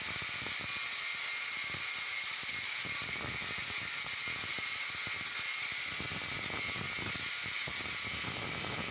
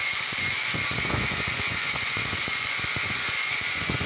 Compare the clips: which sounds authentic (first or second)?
first